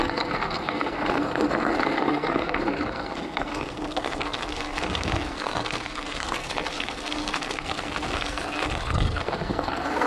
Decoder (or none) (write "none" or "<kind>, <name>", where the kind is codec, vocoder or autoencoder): codec, SNAC